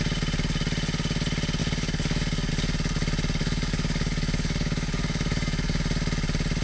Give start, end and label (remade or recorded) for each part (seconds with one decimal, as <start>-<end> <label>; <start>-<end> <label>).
0.0-1.6 recorded; 1.6-2.5 remade; 2.5-3.4 recorded; 3.4-5.8 remade; 5.8-6.6 recorded